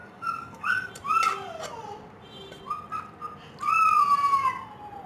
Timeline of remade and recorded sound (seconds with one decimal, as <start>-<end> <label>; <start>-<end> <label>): 0.0-0.9 remade; 0.9-5.1 recorded